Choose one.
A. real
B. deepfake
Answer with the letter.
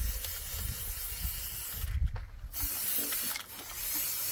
A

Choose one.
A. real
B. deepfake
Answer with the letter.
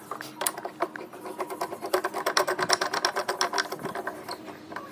A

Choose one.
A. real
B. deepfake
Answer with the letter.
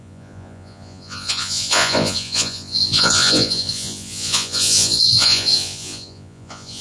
B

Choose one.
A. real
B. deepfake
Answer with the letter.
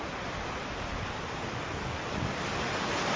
A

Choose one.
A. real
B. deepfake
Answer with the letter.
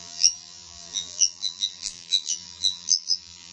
B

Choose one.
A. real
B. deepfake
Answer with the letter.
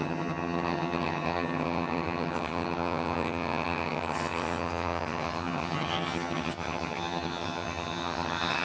B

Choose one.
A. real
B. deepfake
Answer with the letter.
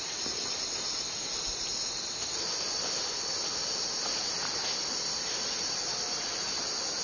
A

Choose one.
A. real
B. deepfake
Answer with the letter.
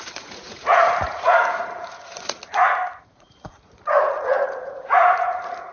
B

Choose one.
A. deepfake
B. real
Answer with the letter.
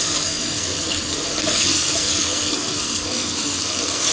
A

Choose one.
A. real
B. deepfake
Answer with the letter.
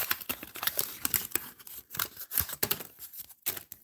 A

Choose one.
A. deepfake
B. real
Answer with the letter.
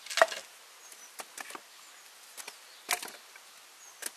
B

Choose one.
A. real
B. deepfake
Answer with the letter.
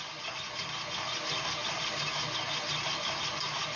A